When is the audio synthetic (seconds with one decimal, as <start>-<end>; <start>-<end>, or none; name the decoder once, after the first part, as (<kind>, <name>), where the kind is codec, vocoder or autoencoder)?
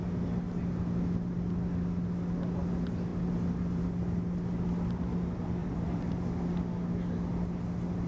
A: 5.6-6.1 (vocoder, BigVGAN v2)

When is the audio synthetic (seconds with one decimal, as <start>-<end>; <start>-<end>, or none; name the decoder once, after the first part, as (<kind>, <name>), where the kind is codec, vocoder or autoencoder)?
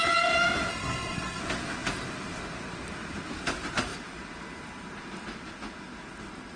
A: 0.7-1.4 (codec, SNAC)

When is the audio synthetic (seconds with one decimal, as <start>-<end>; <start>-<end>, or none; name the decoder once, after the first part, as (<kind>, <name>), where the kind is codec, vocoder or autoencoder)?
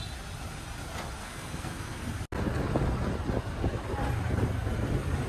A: 1.2-2.1 (codec, SNAC)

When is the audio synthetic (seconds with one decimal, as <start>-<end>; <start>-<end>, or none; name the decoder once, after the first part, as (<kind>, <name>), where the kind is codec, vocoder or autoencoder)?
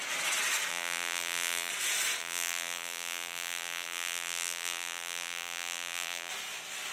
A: 0.7-1.7 (vocoder, BigVGAN v2); 2.2-6.3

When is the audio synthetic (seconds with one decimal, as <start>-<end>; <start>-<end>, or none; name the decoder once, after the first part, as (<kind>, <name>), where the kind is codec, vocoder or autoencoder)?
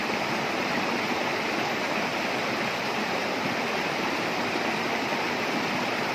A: 0.0-2.1 (vocoder, BigVGAN v2); 3.8-6.1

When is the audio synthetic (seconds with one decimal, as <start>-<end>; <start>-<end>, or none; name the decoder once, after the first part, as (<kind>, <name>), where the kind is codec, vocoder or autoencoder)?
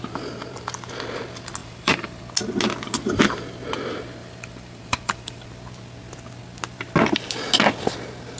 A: 1.6-2.2 (vocoder, BigVGAN v2); 4.2-5.5